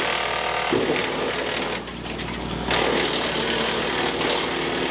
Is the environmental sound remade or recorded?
recorded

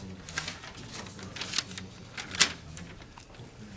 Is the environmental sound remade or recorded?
recorded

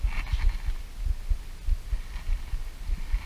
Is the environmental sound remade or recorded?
recorded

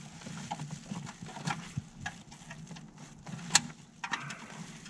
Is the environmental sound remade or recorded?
recorded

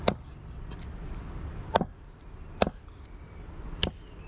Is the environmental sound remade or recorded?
recorded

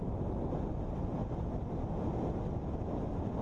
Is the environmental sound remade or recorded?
recorded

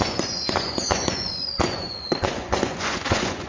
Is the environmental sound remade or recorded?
remade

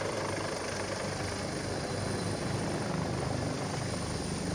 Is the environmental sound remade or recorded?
recorded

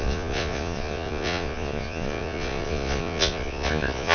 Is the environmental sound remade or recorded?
remade